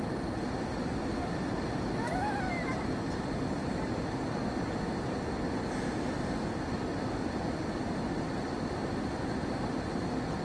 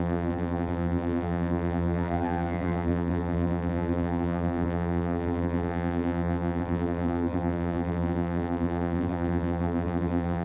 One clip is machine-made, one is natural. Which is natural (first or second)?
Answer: first